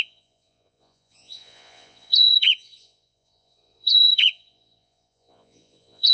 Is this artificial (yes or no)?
yes